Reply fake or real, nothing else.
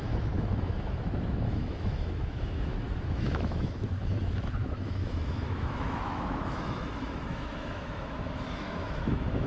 fake